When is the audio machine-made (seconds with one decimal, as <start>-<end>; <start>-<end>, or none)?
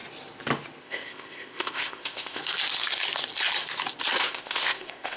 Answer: 0.8-2.4; 4.2-5.2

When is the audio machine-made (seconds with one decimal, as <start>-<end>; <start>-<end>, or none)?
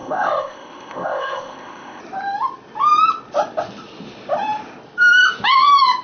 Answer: 0.0-2.0